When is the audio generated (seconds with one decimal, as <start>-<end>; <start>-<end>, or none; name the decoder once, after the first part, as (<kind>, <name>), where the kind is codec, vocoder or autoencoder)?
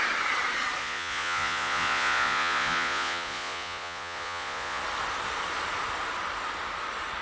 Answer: 0.8-4.8 (vocoder, Vocos)